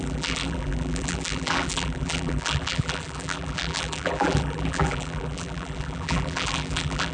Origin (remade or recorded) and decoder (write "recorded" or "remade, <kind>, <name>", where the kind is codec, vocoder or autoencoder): remade, vocoder, BigVGAN v2